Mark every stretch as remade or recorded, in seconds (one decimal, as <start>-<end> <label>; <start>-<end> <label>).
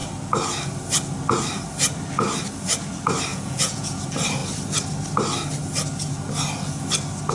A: 0.0-3.3 recorded; 3.3-4.0 remade; 4.0-7.3 recorded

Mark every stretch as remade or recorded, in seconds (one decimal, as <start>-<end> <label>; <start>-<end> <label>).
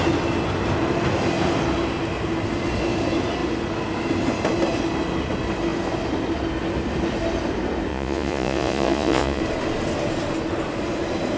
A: 0.0-7.9 recorded; 7.9-9.4 remade; 9.4-11.4 recorded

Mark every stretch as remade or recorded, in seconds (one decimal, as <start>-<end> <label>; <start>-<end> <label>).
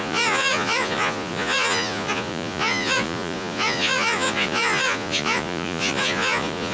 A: 0.0-6.7 remade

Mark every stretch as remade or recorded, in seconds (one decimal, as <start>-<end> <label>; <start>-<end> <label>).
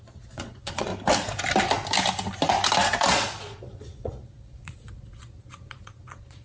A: 0.0-0.9 remade; 0.9-3.1 recorded; 3.1-6.4 remade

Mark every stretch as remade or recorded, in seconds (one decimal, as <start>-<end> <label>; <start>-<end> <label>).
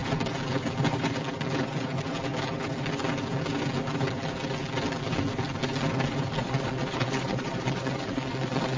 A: 0.0-6.4 recorded; 6.4-8.8 remade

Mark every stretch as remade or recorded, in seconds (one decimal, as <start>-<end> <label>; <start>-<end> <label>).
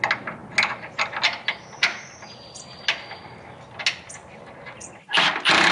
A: 0.0-5.7 recorded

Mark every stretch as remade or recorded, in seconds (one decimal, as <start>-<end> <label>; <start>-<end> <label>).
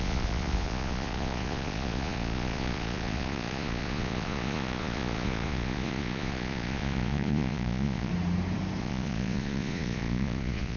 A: 0.0-8.1 remade; 8.1-8.8 recorded; 8.8-10.8 remade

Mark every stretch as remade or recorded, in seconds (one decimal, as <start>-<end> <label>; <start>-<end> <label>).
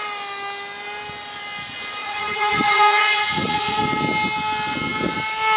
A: 0.0-2.0 recorded; 2.0-3.8 remade; 3.8-5.6 recorded